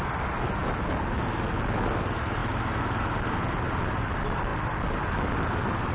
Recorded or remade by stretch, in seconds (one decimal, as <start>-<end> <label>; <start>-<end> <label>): 0.0-5.9 recorded